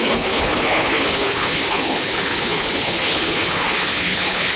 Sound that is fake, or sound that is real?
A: fake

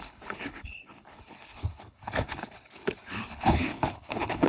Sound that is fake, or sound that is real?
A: fake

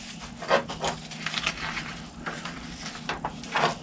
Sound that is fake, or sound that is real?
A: real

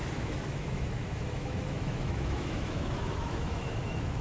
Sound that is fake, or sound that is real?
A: fake